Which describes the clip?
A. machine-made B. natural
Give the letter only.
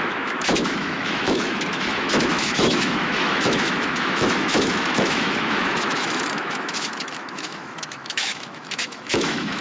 A